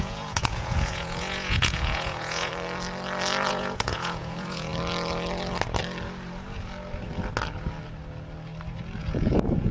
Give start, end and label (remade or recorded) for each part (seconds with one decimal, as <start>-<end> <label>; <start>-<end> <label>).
0.0-2.5 remade; 2.5-3.5 recorded; 3.5-4.7 remade; 4.7-9.0 recorded; 9.0-9.7 remade